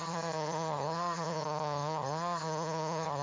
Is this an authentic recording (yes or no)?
no